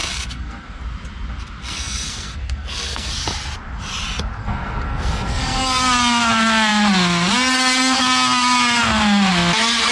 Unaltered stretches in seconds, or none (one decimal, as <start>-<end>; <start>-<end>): 0.8-1.6; 3.1-4.4; 5.8-9.9